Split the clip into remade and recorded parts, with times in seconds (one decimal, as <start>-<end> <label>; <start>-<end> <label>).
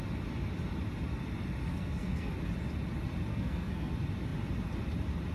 0.0-1.7 recorded; 1.7-2.3 remade; 2.3-3.3 recorded; 3.3-3.9 remade; 3.9-5.3 recorded